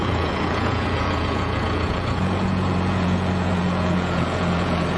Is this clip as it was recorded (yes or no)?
no